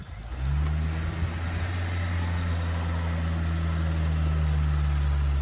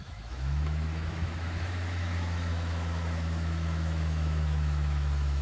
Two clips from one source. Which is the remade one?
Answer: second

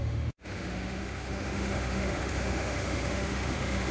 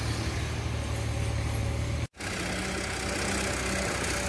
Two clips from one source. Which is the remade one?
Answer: first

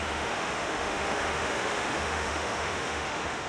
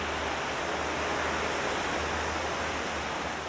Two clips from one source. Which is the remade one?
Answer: first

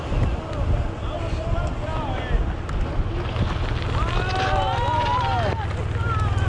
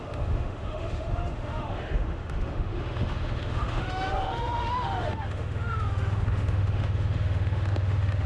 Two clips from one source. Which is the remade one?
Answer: second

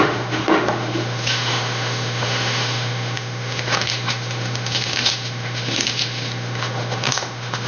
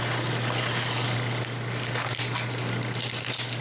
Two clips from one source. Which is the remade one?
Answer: first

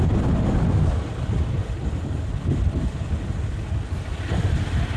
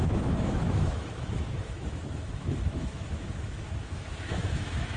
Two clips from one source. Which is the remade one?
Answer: second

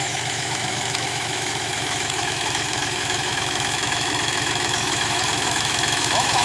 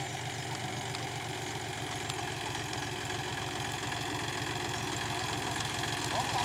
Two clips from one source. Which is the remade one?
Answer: first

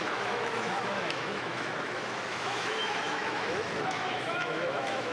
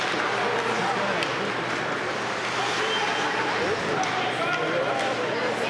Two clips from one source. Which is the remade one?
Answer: first